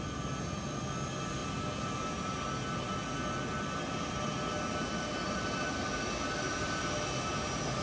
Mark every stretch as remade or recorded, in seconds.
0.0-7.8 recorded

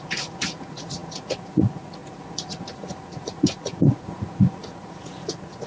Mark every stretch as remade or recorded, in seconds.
0.0-5.7 remade

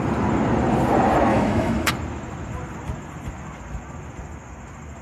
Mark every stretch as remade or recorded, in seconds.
0.0-1.3 recorded; 1.3-1.9 remade; 1.9-5.0 recorded